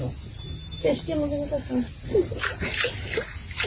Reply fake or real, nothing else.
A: real